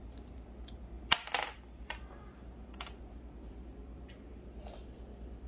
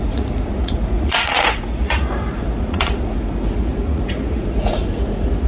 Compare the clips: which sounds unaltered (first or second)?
first